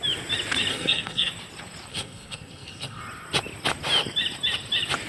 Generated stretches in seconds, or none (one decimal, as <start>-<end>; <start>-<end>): 0.7-1.3; 1.9-3.0